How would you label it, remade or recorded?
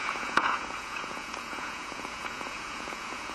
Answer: remade